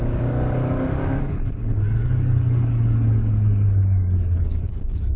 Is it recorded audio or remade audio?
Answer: remade